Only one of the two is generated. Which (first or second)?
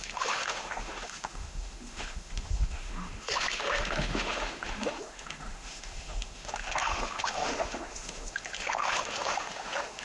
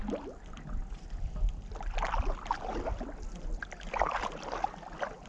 first